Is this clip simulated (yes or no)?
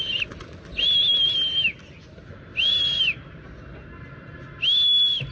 no